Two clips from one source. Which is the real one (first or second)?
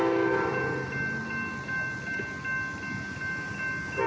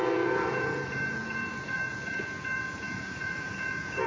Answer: first